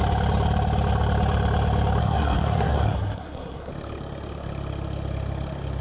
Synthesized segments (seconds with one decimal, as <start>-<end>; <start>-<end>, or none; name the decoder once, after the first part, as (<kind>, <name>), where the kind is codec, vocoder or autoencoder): 2.0-3.7 (codec, SNAC)